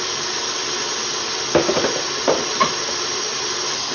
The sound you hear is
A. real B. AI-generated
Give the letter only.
A